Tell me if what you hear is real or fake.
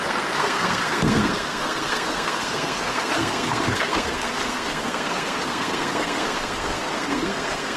fake